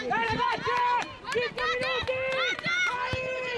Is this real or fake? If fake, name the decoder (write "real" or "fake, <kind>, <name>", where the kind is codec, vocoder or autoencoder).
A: real